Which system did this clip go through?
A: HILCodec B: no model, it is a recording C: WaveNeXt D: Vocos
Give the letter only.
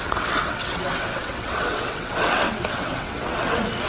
C